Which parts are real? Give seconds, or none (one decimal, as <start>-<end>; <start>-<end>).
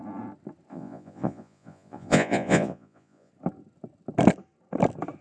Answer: 0.0-0.7; 3.3-5.2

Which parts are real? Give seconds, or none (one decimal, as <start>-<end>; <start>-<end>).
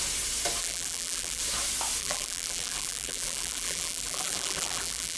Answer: 0.0-0.6; 1.4-2.0